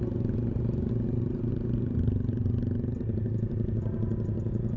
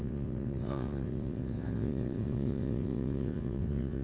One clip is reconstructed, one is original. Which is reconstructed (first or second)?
second